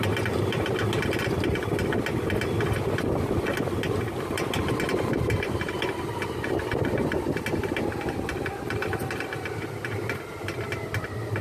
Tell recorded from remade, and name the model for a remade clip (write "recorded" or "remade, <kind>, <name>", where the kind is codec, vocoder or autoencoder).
recorded